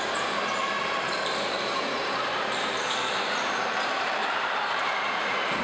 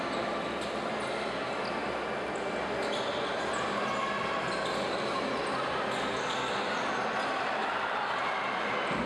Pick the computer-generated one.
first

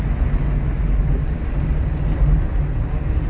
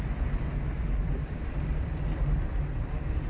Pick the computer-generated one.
second